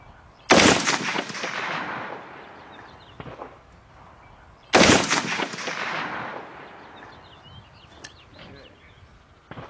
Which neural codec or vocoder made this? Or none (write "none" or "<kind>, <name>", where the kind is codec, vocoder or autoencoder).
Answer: none